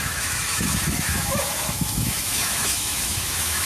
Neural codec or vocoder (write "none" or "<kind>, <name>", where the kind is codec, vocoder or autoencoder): autoencoder, DAC-VAE